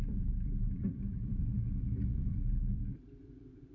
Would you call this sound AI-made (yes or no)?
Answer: yes